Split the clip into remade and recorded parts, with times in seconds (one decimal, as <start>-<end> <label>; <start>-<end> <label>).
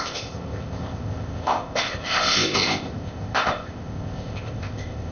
0.0-5.1 remade